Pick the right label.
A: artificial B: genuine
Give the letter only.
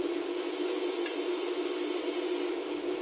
B